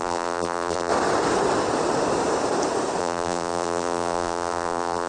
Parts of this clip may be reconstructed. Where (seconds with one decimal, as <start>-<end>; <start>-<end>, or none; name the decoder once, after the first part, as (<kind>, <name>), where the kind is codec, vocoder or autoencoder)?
0.0-0.9 (vocoder, BigVGAN v2); 3.0-5.1